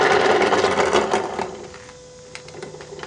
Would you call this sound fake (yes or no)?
no